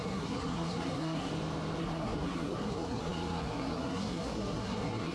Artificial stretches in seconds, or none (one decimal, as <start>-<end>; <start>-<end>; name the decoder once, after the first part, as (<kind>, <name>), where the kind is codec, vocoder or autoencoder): 0.0-1.3 (codec, SNAC); 1.8-5.1